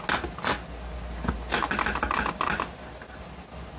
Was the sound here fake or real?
real